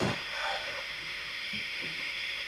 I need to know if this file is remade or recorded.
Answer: remade